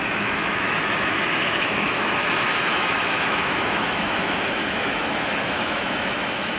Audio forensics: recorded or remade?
remade